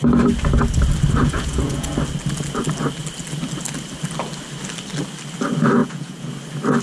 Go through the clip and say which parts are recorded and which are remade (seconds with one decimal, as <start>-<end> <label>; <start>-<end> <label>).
0.0-1.2 recorded; 1.2-1.9 remade; 1.9-5.8 recorded; 5.8-6.3 remade; 6.3-6.8 recorded